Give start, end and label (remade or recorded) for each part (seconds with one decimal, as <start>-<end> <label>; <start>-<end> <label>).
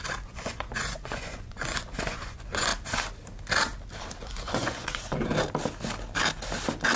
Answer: 0.0-2.7 remade; 2.7-4.2 recorded; 4.2-5.3 remade; 5.3-7.0 recorded